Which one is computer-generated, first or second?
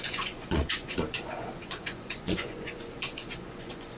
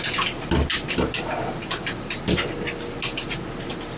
first